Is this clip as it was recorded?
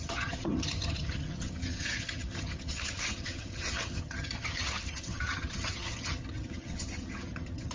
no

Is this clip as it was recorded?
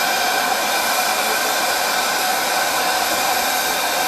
yes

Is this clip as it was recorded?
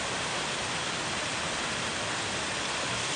yes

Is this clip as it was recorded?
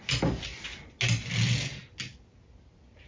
yes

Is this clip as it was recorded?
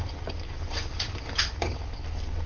yes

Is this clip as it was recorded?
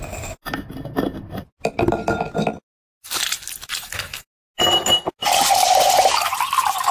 yes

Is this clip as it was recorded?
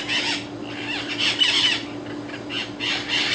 yes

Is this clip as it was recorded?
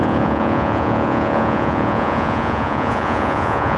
no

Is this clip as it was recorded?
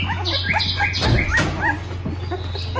yes